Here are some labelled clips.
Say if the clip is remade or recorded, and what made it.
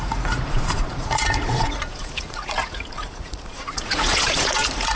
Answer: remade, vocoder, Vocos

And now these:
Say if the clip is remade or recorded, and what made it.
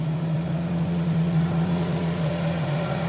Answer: remade, vocoder, Vocos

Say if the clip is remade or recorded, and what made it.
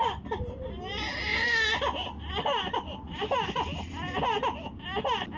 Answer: recorded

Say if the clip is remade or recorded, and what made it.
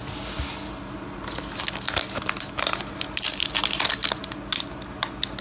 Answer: recorded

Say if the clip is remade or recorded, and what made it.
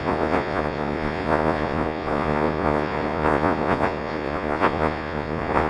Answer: remade, vocoder, Vocos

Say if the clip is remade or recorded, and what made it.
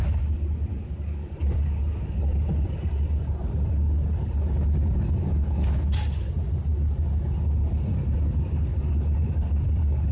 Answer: recorded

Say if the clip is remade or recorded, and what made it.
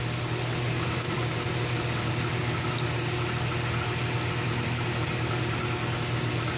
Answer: recorded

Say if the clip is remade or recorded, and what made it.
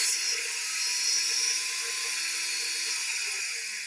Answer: recorded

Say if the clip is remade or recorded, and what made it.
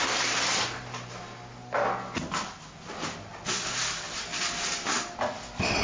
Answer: recorded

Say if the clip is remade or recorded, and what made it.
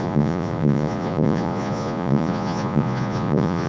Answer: remade, vocoder, Vocos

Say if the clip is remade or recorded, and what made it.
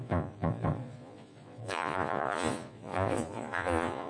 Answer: remade, vocoder, Vocos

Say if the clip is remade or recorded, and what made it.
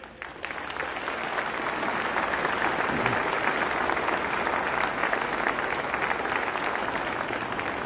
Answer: recorded